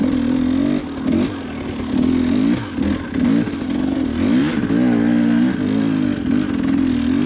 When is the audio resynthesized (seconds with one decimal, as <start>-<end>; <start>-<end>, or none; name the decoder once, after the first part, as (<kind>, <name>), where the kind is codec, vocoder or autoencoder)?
none